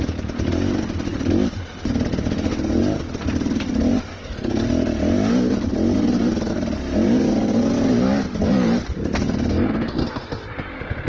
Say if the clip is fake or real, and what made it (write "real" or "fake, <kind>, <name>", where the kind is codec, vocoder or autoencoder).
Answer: real